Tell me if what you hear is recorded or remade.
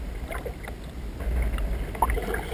recorded